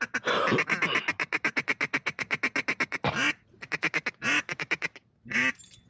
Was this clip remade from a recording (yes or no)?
no